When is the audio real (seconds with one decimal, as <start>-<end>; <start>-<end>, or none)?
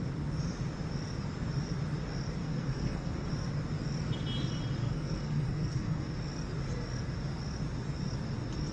0.0-2.4; 3.3-4.8; 6.1-8.7